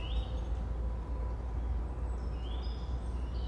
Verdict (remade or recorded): recorded